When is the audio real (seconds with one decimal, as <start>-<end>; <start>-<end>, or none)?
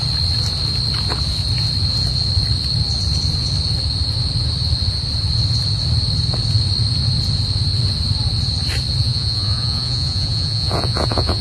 0.0-9.0